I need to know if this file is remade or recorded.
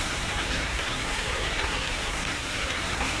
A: remade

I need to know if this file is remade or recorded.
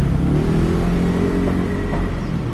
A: recorded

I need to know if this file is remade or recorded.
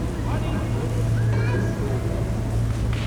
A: recorded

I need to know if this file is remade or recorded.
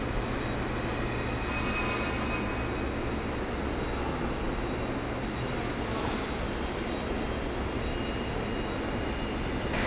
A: recorded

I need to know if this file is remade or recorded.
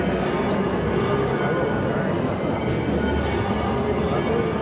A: recorded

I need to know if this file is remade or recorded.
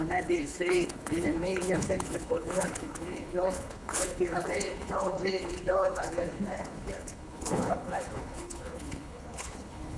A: remade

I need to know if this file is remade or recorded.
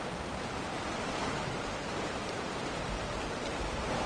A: remade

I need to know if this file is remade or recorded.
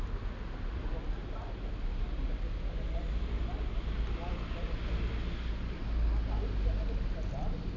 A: recorded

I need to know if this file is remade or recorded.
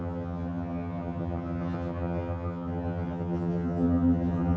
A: remade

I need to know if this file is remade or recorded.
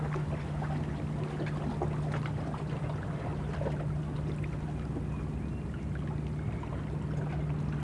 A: recorded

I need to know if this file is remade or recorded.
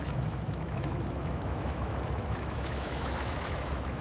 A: remade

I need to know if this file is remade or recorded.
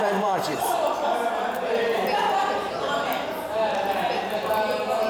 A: remade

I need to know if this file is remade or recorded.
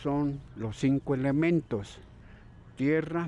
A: recorded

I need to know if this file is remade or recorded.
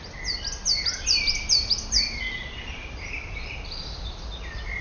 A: remade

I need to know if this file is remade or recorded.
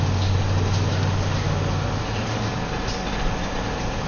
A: recorded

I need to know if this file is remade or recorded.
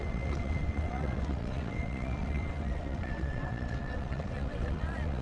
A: remade